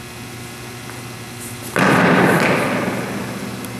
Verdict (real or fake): real